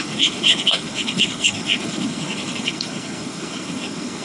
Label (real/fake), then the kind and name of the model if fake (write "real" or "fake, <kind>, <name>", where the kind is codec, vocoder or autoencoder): fake, codec, SNAC